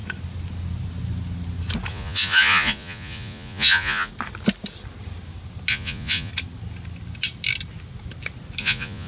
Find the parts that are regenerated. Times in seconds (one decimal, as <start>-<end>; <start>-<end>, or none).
1.9-4.1; 5.7-6.3; 8.6-9.1